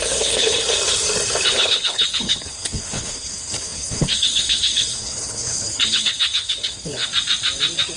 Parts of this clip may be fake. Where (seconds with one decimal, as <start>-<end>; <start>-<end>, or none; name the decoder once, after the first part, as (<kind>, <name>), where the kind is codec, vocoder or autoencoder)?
0.0-0.6 (codec, HILCodec); 1.5-7.1